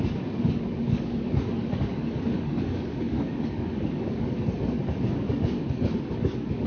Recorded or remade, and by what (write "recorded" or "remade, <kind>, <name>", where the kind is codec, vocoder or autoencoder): remade, codec, DAC